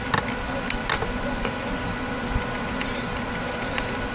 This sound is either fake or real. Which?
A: real